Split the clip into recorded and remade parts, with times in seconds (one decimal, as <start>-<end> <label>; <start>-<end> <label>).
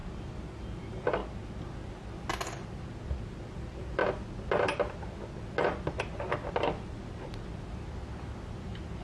0.0-0.6 recorded; 0.6-1.2 remade; 1.2-3.4 recorded; 3.4-4.0 remade; 4.0-8.3 recorded; 8.3-9.0 remade